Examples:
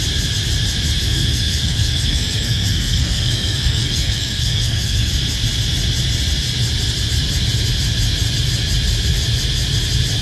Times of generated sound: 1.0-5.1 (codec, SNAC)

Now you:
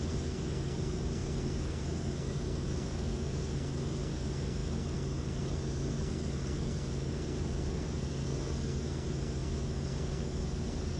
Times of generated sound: 0.0-11.0 (codec, SNAC)

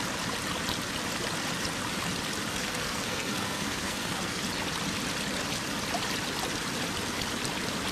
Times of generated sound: 2.5-4.4 (codec, SNAC)